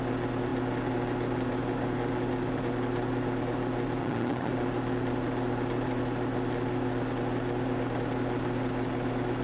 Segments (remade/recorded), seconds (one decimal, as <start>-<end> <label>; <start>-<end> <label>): 0.0-4.0 recorded; 4.0-4.5 remade; 4.5-9.4 recorded